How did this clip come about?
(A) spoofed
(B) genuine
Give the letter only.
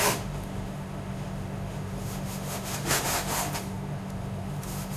A